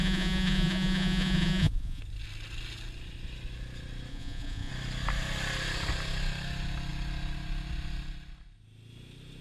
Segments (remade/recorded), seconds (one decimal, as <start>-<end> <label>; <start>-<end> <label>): 0.0-2.0 remade; 2.0-4.1 recorded; 4.1-4.7 remade; 4.7-9.4 recorded